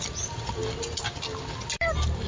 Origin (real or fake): real